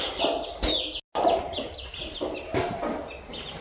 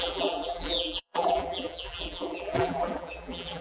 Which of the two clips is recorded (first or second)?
first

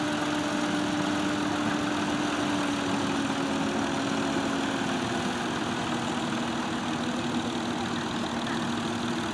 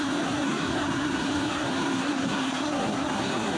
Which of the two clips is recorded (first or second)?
first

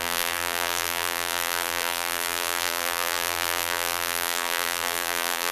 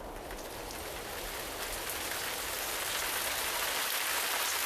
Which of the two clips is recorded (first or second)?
second